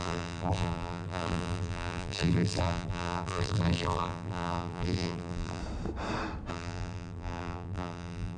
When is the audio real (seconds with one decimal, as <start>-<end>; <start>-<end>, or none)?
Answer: 5.6-6.5